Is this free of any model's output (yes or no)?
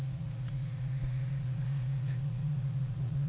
no